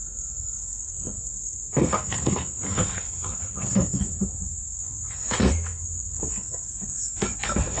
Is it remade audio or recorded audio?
remade